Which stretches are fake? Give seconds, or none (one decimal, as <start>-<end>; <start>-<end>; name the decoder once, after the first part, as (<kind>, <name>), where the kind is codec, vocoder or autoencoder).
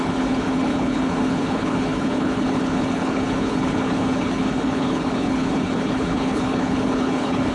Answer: 0.0-7.5 (codec, HILCodec)